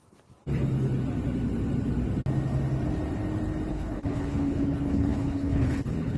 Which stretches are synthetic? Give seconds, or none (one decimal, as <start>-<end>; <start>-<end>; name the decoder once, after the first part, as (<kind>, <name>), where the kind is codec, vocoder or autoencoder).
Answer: 3.7-6.2 (codec, HILCodec)